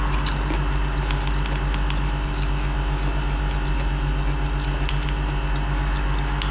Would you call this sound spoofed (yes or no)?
no